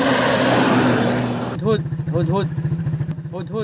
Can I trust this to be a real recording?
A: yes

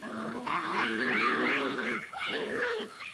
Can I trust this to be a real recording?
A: no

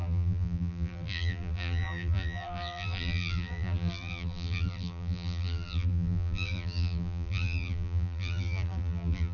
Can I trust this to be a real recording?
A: no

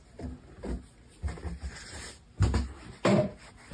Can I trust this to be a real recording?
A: yes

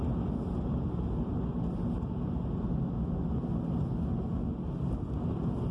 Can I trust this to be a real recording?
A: yes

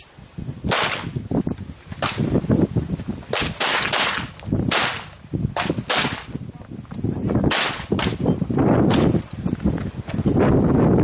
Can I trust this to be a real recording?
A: yes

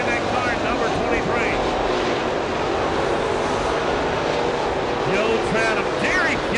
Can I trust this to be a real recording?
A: yes